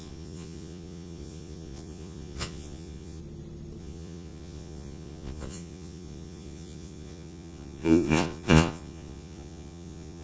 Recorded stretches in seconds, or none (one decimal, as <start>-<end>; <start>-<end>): 3.2-3.8